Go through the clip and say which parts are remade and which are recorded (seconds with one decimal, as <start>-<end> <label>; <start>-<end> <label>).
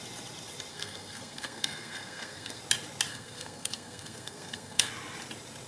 0.0-0.7 recorded; 0.7-2.6 remade; 2.6-3.1 recorded; 3.1-4.9 remade; 4.9-5.7 recorded